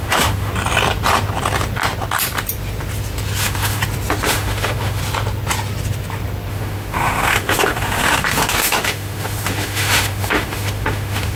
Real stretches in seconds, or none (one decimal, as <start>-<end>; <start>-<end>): 0.5-3.4; 3.8-4.3; 5.0-6.5